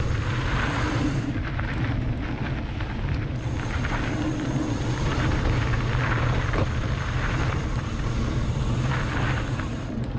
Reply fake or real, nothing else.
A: fake